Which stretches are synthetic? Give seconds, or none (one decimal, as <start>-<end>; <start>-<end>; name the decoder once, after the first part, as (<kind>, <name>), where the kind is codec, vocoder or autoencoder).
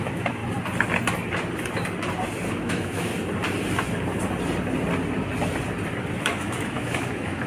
0.0-0.4 (autoencoder, DAC-VAE); 2.5-3.1; 6.2-7.5